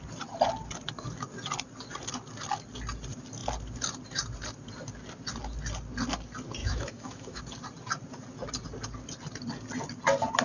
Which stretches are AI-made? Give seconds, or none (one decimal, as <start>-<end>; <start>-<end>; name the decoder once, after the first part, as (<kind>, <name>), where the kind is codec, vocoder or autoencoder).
6.6-7.4 (autoencoder, DAC-VAE)

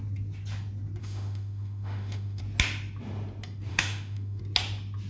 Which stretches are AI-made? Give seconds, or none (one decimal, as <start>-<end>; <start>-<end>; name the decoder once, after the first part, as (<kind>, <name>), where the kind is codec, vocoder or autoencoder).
1.0-2.4 (autoencoder, DAC-VAE); 3.7-4.4

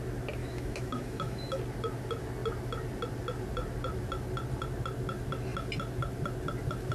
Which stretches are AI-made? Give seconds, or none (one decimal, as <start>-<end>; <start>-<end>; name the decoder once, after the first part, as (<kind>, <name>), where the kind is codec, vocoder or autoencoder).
0.4-1.6 (autoencoder, DAC-VAE)

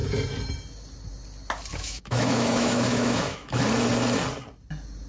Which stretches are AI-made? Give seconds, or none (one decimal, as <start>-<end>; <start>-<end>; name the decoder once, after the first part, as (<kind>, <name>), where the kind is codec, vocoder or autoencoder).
1.7-3.6 (autoencoder, DAC-VAE)

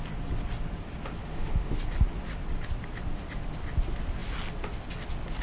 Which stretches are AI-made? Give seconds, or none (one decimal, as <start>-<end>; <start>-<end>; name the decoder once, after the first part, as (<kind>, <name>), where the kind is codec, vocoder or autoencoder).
1.3-1.8 (autoencoder, DAC-VAE)

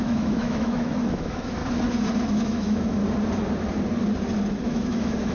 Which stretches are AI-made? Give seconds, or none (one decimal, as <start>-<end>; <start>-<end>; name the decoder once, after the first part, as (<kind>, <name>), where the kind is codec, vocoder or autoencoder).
0.0-1.6 (autoencoder, DAC-VAE); 2.3-3.0; 4.6-5.3